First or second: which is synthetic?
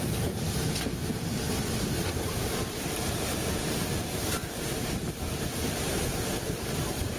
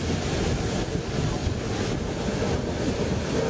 first